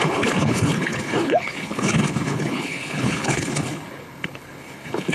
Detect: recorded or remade remade